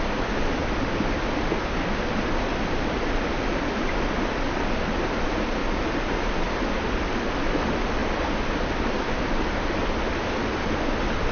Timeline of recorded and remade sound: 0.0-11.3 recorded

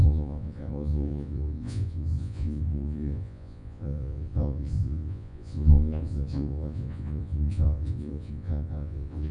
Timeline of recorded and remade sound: 0.0-9.3 remade

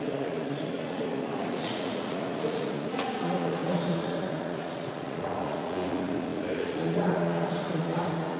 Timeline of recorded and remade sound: 0.0-8.4 remade

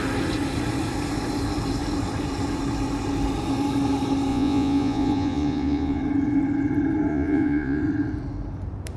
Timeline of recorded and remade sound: 0.0-4.3 recorded; 4.3-6.0 remade; 6.0-7.1 recorded; 7.1-7.8 remade; 7.8-9.0 recorded